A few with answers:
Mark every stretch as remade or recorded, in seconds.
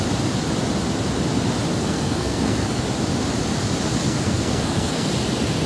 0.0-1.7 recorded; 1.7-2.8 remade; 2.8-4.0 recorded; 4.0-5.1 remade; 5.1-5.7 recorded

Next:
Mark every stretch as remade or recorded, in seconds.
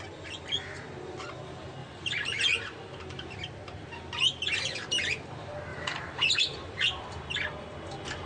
0.0-1.8 recorded; 1.8-3.0 remade; 3.0-5.7 recorded; 5.7-7.0 remade; 7.0-8.3 recorded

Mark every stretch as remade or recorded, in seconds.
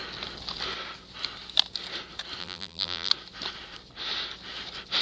0.0-2.4 recorded; 2.4-3.1 remade; 3.1-5.0 recorded